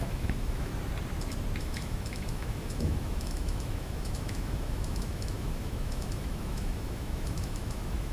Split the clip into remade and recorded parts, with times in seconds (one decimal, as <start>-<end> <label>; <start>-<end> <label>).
0.0-0.7 remade; 0.7-1.6 recorded; 1.6-8.1 remade